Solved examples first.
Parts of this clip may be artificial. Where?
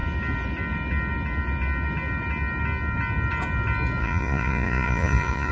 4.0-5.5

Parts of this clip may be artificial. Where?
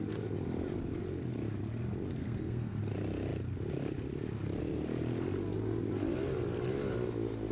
2.2-2.8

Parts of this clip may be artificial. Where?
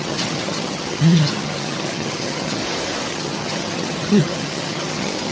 0.0-2.6; 3.1-5.3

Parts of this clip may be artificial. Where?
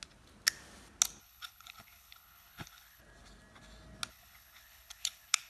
1.2-3.0; 4.1-5.5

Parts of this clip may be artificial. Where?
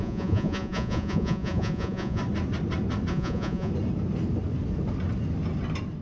0.0-2.2; 3.1-3.7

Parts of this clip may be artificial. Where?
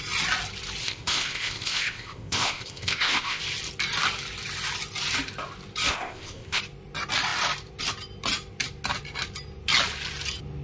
0.8-3.4; 5.9-6.6